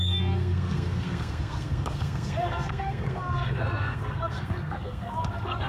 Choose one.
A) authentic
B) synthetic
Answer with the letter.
B